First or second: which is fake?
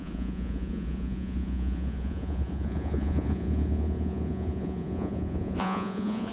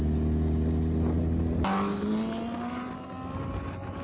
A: first